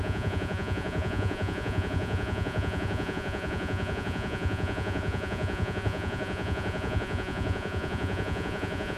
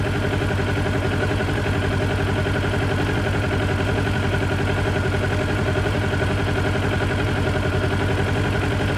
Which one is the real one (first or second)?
second